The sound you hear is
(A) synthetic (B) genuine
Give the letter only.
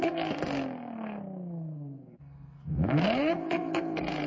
A